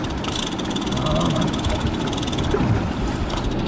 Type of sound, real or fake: real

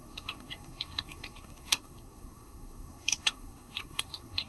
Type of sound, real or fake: fake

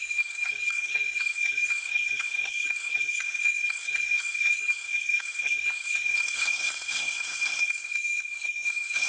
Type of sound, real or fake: fake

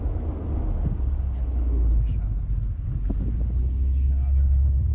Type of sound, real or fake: real